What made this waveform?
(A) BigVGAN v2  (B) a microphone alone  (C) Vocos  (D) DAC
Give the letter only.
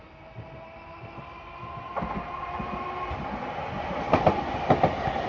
B